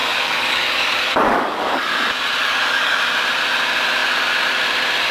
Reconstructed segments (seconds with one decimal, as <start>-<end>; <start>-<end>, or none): 0.0-1.9; 2.4-3.0